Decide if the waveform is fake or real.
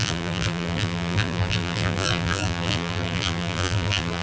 fake